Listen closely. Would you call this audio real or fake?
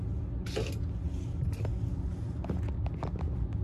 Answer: real